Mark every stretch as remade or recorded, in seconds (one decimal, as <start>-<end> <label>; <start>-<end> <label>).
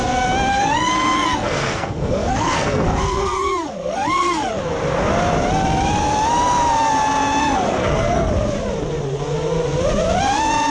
0.0-0.5 recorded; 0.5-4.6 remade; 4.6-7.4 recorded; 7.4-8.3 remade; 8.3-10.7 recorded